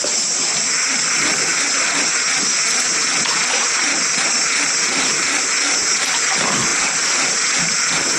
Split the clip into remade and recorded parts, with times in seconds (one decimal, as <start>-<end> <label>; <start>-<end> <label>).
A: 0.0-8.2 recorded